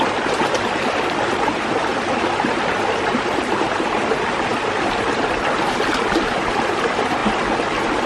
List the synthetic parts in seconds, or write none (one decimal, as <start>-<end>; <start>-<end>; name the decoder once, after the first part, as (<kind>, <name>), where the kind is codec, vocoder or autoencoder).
1.9-3.4 (vocoder, BigVGAN v2); 7.2-8.1